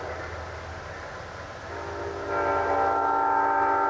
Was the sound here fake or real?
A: real